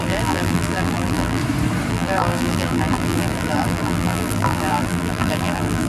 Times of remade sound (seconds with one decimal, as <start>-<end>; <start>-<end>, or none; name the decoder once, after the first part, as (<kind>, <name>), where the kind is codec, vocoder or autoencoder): 0.0-1.4 (vocoder, BigVGAN v2); 1.9-5.9